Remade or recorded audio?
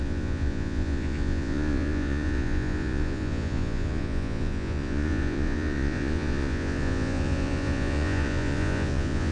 remade